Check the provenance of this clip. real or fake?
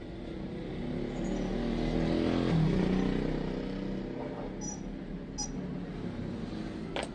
real